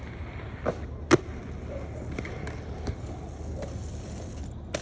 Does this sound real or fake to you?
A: real